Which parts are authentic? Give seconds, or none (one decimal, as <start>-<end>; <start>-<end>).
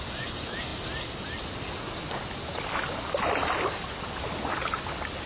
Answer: 0.0-5.3